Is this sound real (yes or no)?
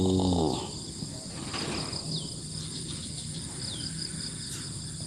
yes